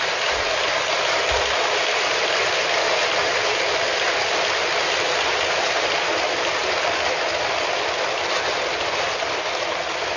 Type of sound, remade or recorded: recorded